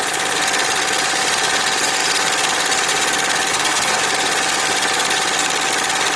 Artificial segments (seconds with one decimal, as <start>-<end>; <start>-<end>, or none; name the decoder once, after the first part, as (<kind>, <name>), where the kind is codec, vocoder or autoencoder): 3.5-4.0 (codec, SNAC)